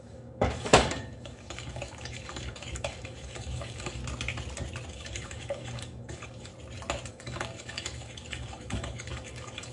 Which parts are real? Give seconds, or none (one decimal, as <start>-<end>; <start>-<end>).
4.0-4.9; 6.5-7.1